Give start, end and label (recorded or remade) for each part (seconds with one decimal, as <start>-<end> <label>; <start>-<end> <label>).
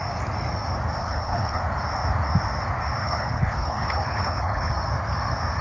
0.0-1.0 recorded; 1.0-1.6 remade; 1.6-3.0 recorded; 3.0-4.7 remade; 4.7-5.6 recorded